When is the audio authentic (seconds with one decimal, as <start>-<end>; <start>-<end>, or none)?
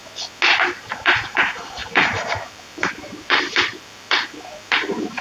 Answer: 0.0-0.8